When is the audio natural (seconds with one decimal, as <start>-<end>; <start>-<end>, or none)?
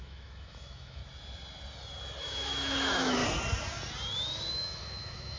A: 1.0-2.2; 3.2-4.5